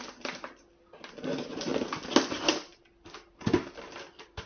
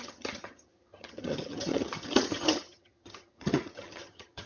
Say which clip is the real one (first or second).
first